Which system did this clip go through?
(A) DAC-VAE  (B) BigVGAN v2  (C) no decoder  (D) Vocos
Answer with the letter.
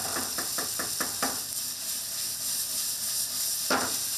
C